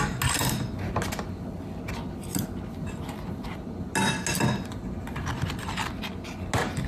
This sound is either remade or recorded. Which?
recorded